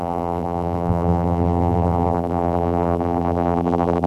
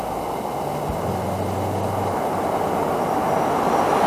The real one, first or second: second